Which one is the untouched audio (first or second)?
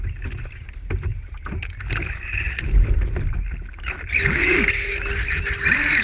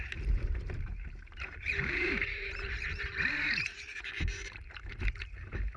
first